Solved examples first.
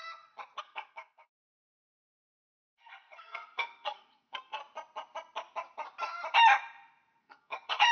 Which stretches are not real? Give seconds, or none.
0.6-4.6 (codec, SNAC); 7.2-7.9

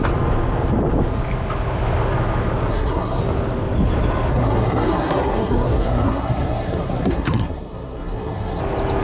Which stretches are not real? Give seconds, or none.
2.7-3.2 (codec, SNAC); 4.3-8.6

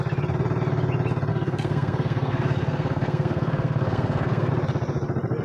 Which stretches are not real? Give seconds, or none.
1.3-4.5 (codec, SNAC)

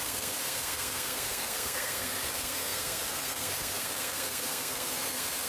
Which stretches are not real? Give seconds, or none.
0.0-5.5 (codec, SNAC)

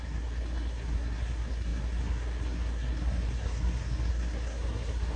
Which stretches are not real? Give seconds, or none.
0.0-5.2 (codec, SNAC)

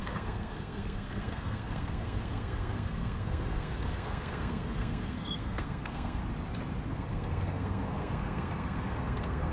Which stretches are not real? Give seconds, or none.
0.0-6.2 (codec, SNAC); 6.9-9.5

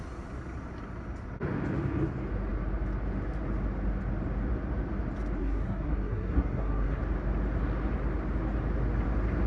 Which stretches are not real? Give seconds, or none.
5.4-7.0 (codec, SNAC)

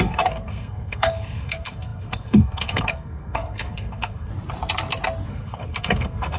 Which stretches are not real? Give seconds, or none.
0.0-4.3 (codec, SNAC); 5.3-6.4